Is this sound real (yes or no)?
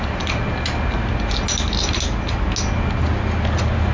yes